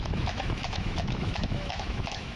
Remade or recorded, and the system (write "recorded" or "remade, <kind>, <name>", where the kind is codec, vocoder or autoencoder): remade, autoencoder, DAC-VAE